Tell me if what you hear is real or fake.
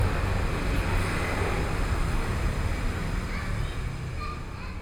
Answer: real